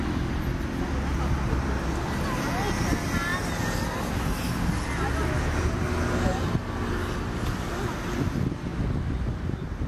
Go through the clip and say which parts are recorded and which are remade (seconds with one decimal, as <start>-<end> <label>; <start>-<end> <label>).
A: 0.0-9.9 recorded